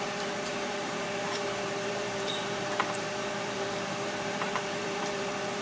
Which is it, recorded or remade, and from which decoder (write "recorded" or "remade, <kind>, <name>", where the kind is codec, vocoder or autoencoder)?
remade, vocoder, BigVGAN v2